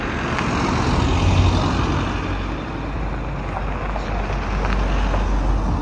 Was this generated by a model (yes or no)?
no